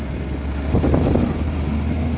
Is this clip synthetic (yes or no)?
no